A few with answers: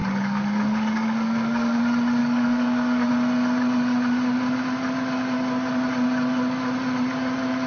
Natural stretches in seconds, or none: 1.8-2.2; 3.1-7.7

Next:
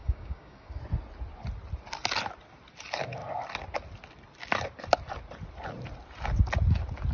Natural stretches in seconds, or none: 0.8-7.1